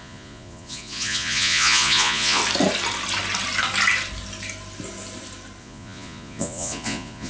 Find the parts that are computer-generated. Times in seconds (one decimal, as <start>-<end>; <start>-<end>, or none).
0.0-2.4; 5.6-7.3